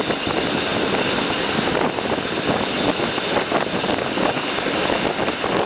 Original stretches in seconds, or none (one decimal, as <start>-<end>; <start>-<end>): 0.0-5.7